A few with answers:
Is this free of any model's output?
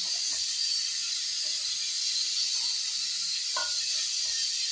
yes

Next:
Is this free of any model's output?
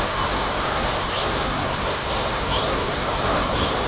no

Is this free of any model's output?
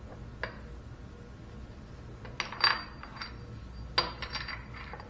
yes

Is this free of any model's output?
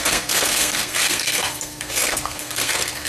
no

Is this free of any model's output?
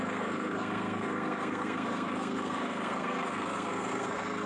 no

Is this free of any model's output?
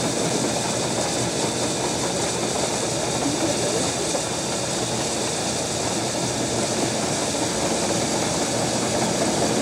yes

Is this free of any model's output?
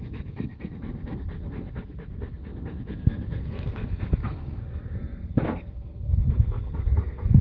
no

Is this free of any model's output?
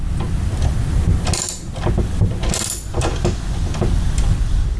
yes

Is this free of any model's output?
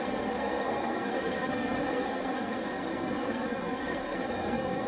no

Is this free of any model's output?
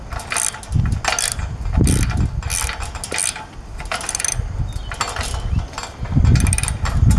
yes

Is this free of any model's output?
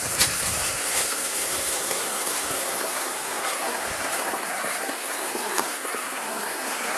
no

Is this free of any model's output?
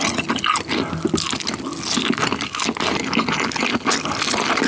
yes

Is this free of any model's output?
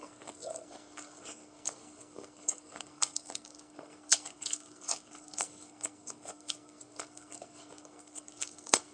no